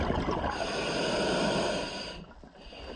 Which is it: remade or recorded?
recorded